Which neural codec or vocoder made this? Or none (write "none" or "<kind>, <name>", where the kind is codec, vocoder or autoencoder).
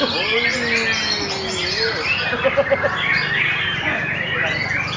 none